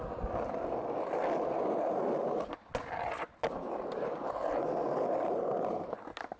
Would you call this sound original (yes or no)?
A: yes